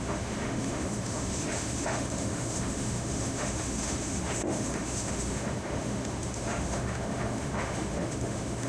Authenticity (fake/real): fake